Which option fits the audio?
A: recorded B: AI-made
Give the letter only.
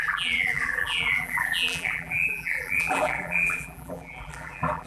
B